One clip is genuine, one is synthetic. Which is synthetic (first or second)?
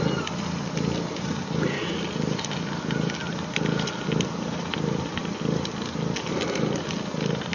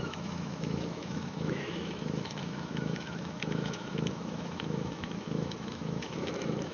second